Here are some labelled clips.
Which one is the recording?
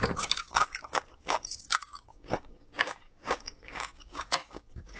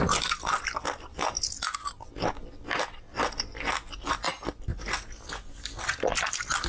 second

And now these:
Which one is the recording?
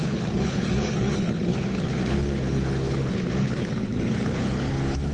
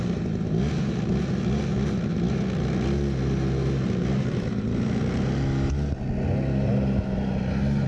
second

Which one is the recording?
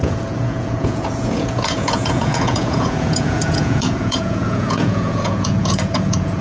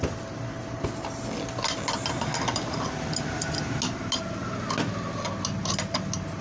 second